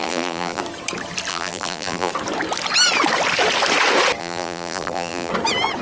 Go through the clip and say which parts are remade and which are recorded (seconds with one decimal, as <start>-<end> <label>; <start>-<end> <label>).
0.0-0.6 remade; 0.6-1.3 recorded; 1.3-2.1 remade; 2.1-4.2 recorded; 4.2-5.3 remade; 5.3-5.8 recorded